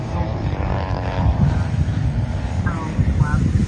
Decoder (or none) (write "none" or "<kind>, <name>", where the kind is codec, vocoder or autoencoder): vocoder, BigVGAN v2